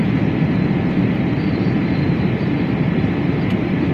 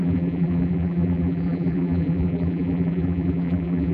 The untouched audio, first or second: first